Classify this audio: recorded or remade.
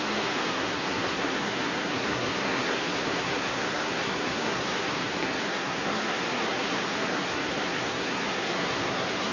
remade